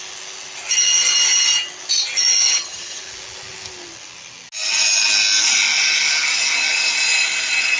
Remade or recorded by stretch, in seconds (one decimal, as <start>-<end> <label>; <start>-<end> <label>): 0.0-2.4 recorded; 2.4-3.0 remade; 3.0-7.8 recorded